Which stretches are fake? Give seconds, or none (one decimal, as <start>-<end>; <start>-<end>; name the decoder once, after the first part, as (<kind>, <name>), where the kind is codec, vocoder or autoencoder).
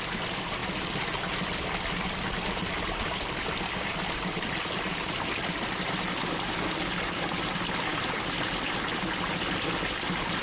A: none